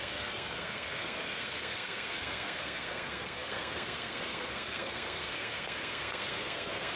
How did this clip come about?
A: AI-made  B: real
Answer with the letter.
A